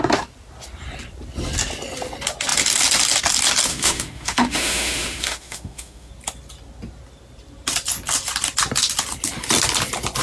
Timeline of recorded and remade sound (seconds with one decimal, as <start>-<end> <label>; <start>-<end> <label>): 0.0-3.7 recorded; 3.7-6.1 remade; 6.1-10.2 recorded